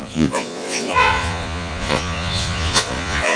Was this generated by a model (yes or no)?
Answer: yes